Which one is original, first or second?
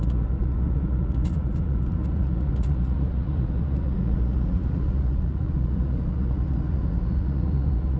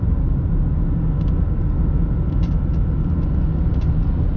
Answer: second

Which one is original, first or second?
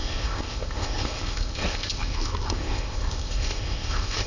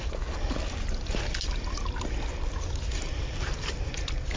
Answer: second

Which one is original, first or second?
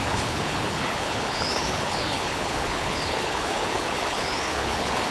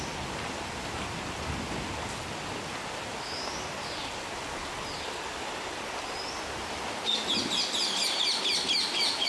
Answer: second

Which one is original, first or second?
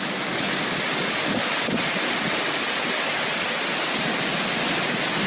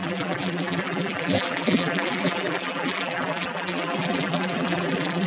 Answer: first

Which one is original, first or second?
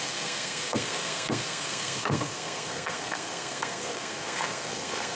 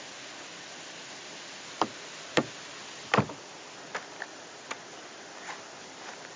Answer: second